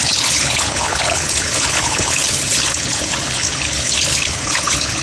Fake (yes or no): yes